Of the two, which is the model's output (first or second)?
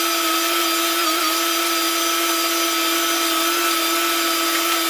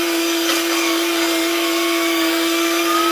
second